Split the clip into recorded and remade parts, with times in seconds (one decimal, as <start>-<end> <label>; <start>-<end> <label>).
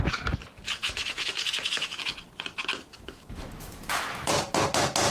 0.0-0.8 recorded; 0.8-2.1 remade; 2.1-2.9 recorded; 2.9-4.3 remade; 4.3-5.1 recorded